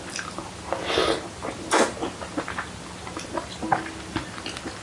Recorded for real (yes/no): yes